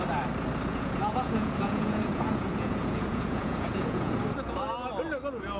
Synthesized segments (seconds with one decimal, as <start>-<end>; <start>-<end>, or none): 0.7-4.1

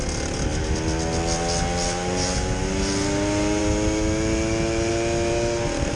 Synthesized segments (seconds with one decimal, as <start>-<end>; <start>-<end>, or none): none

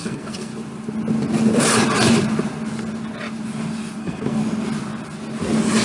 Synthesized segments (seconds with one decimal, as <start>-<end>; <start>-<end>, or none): 0.0-0.5; 4.0-4.4

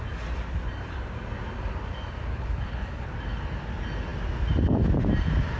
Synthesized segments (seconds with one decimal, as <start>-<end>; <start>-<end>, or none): 2.3-3.1

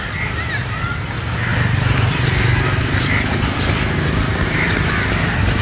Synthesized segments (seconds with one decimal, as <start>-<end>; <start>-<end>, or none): 1.5-4.9